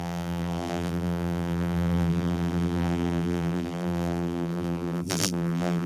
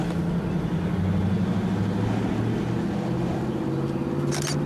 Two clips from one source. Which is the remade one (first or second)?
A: first